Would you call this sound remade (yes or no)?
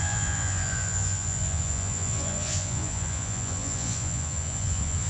yes